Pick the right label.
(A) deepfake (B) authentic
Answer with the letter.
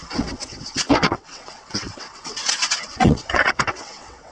A